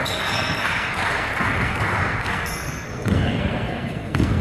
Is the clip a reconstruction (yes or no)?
yes